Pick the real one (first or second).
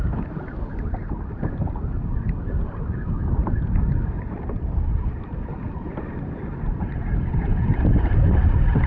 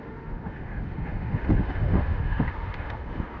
first